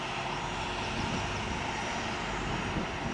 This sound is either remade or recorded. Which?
recorded